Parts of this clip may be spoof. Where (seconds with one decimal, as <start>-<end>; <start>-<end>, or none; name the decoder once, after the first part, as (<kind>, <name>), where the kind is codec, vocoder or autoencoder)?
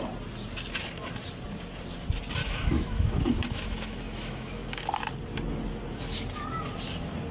2.4-4.9 (autoencoder, DAC-VAE)